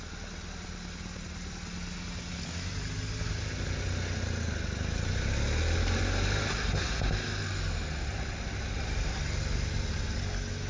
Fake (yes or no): no